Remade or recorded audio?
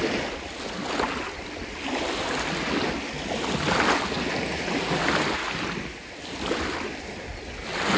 recorded